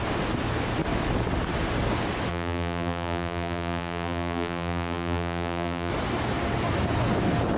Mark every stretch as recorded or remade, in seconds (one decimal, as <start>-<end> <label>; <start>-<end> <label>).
0.0-2.3 recorded; 2.3-5.9 remade; 5.9-7.6 recorded